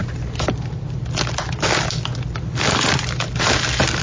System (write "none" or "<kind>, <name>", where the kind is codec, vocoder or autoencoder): none